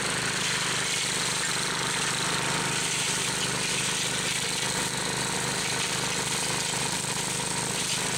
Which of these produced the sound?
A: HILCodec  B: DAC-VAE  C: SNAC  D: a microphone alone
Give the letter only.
D